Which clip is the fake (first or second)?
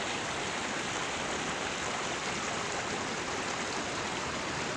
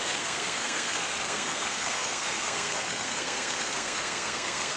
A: second